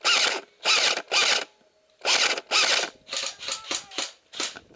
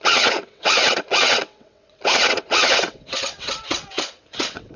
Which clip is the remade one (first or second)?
second